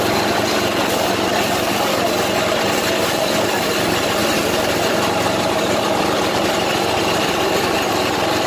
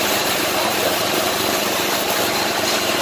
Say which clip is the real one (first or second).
first